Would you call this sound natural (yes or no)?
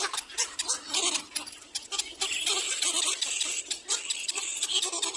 yes